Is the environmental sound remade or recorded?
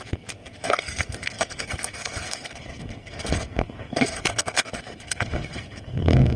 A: remade